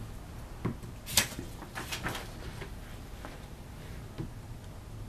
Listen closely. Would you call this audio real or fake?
real